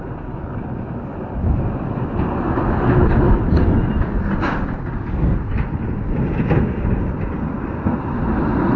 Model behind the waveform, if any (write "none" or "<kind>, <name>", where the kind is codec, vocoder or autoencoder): none